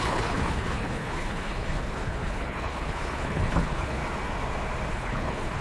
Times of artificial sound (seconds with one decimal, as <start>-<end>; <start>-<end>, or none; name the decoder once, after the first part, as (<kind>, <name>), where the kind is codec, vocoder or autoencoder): 0.0-4.0 (codec, HILCodec); 4.9-5.6